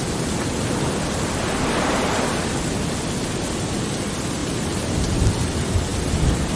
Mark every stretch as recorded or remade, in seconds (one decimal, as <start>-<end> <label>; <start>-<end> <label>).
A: 0.0-4.4 recorded; 4.4-4.9 remade; 4.9-6.6 recorded